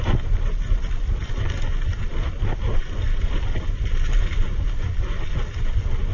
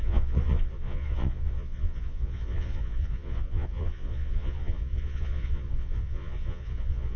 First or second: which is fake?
second